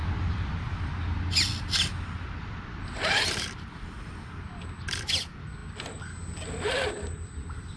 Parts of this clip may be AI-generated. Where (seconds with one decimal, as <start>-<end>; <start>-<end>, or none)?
none